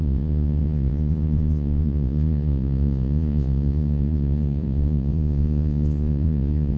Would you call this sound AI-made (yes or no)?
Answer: yes